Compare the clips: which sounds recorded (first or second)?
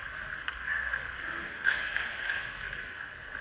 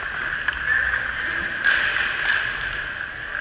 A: second